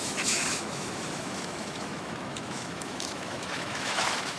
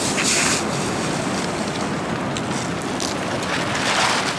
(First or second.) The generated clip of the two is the first